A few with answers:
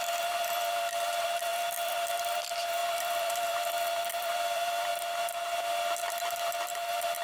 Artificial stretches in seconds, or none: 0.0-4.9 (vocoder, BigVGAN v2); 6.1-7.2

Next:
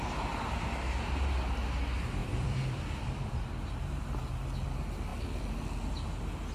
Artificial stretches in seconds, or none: 2.2-3.5 (vocoder, BigVGAN v2)

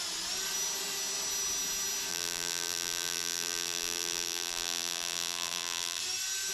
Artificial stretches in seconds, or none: 2.1-6.0 (vocoder, BigVGAN v2)

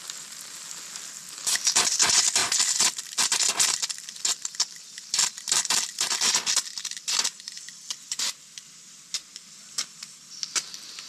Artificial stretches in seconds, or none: 2.4-6.3 (vocoder, BigVGAN v2); 9.3-10.4